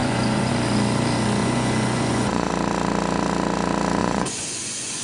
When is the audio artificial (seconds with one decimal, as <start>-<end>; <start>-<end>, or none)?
0.0-0.5; 1.4-2.5; 4.0-5.0